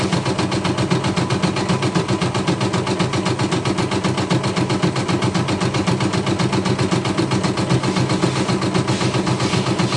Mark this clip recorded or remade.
recorded